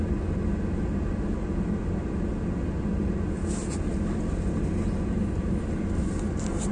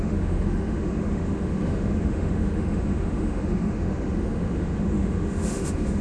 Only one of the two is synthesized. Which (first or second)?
second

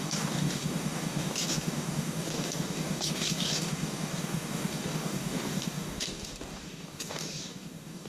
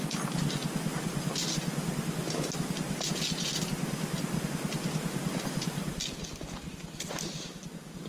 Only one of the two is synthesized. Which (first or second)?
first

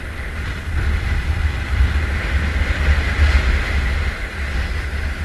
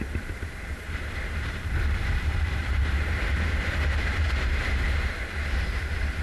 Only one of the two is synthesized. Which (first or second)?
second